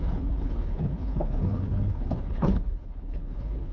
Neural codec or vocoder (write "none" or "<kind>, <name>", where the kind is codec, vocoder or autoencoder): codec, HILCodec